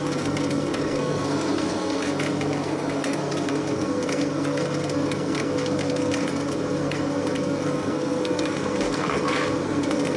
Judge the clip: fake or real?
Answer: fake